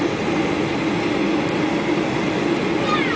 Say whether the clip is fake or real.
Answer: real